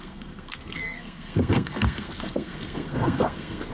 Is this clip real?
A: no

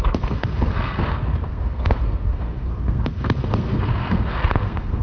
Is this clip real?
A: no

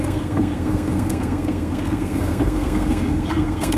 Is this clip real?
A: no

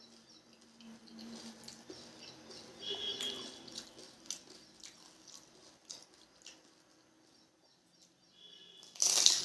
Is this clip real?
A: yes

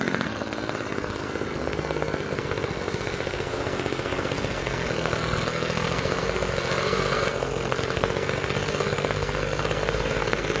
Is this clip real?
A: no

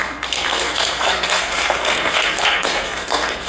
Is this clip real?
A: no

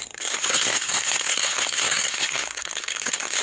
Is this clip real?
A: no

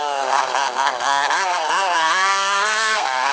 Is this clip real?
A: no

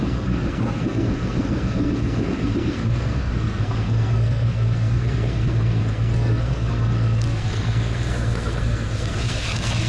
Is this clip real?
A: no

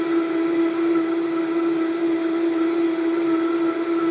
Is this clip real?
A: yes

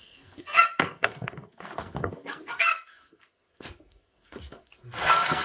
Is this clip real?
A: no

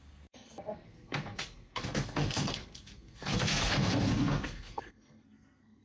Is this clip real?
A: no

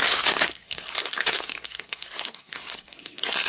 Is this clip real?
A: no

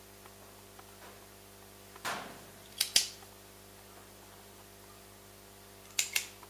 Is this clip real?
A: yes